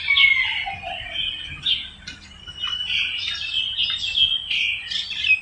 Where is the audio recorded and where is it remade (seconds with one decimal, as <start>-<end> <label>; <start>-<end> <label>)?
0.0-5.4 recorded